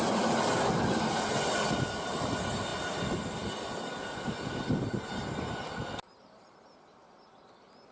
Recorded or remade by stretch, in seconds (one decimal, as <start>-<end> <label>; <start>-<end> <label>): 0.0-7.9 recorded